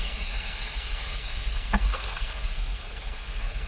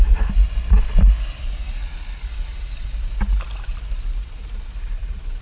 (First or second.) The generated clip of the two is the first